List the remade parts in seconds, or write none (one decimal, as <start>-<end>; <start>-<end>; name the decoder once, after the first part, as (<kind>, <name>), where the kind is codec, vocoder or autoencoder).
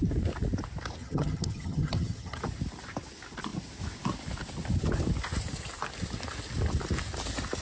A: 1.0-2.4 (vocoder, HiFi-GAN)